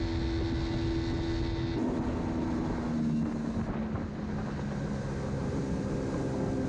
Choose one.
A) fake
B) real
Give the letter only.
B